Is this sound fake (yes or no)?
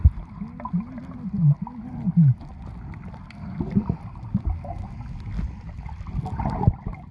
no